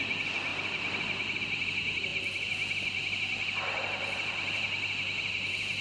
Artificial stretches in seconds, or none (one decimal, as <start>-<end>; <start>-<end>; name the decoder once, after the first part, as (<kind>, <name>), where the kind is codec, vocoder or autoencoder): none